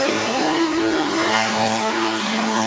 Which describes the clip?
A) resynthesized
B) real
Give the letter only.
A